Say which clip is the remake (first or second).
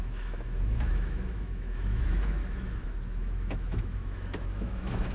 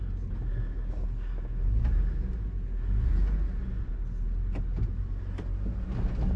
first